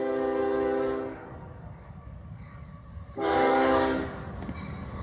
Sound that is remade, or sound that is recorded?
remade